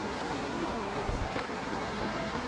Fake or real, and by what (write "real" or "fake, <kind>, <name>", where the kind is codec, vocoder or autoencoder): fake, codec, SNAC